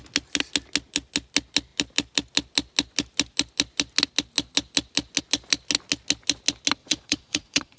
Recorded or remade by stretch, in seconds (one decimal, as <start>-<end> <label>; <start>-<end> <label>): 0.0-6.8 recorded; 6.8-7.8 remade